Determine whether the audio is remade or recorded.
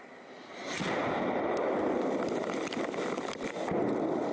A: recorded